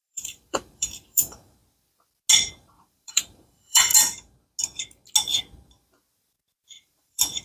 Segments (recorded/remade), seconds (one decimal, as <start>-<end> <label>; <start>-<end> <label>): 0.0-1.6 remade; 1.6-2.5 recorded; 2.5-3.9 remade; 3.9-6.6 recorded; 6.6-7.4 remade